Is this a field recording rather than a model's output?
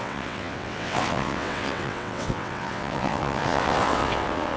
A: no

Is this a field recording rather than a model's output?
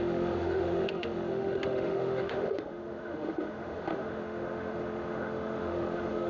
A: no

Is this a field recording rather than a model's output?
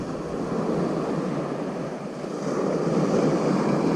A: yes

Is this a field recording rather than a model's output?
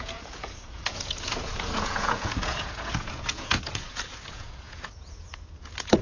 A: no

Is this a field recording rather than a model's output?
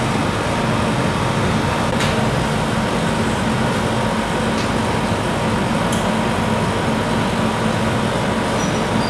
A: yes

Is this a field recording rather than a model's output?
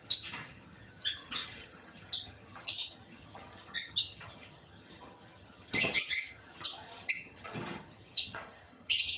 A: no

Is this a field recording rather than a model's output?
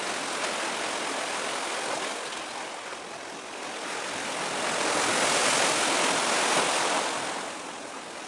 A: yes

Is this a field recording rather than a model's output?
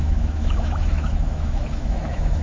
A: no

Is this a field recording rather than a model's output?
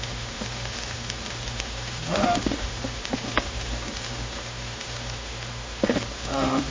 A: no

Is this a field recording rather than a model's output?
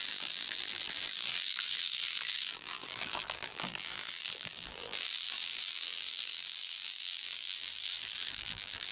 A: no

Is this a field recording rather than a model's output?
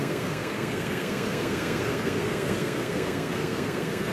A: no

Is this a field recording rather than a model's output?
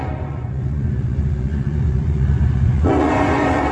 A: no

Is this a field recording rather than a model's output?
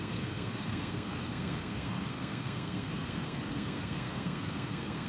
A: no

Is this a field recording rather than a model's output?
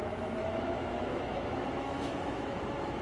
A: no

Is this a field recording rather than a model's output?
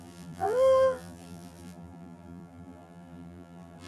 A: no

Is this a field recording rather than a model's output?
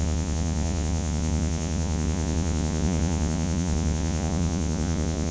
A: no